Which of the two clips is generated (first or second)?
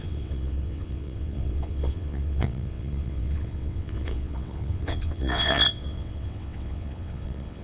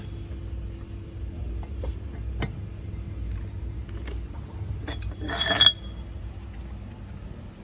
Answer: first